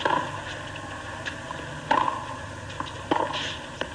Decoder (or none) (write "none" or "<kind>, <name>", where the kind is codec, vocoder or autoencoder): none